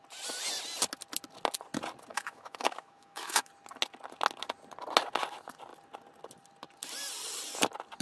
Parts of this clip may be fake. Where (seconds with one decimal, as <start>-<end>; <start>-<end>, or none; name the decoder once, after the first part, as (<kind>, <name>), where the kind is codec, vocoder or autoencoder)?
2.1-3.5 (autoencoder, DAC-VAE)